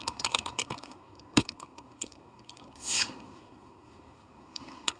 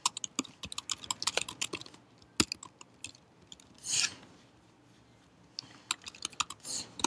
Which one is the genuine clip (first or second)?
second